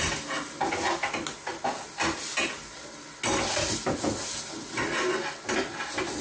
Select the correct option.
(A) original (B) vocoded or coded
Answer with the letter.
A